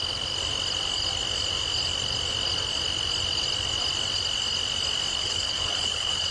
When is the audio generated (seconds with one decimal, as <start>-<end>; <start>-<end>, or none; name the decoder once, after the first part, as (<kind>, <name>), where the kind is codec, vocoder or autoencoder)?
5.1-6.3 (codec, HILCodec)